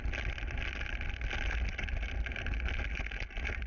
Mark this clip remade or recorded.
recorded